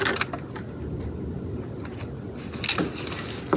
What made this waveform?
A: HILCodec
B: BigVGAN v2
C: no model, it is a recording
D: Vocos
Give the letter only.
C